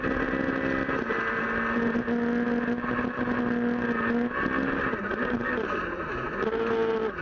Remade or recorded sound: recorded